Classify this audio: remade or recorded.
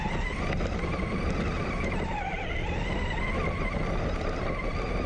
recorded